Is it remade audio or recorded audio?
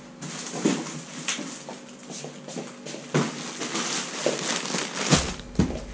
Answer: recorded